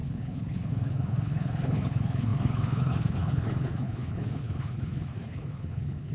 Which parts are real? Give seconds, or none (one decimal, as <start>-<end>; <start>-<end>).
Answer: none